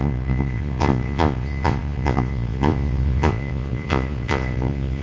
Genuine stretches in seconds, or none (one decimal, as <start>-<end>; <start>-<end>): none